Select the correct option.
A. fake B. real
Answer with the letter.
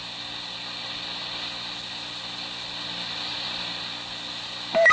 B